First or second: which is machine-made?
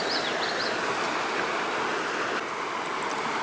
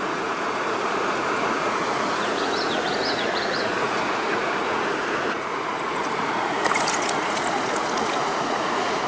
second